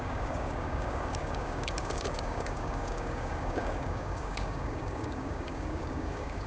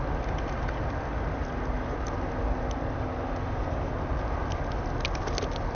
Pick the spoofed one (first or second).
first